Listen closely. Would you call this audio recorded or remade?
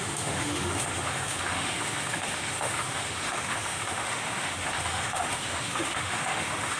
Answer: remade